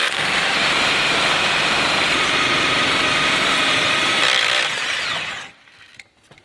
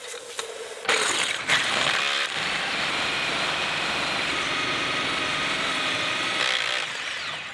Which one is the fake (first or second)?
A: first